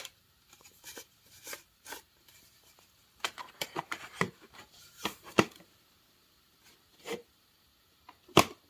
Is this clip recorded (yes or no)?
no